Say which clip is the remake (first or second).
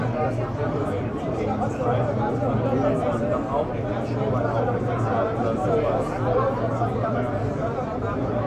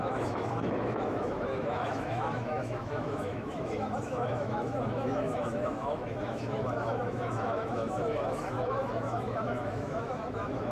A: second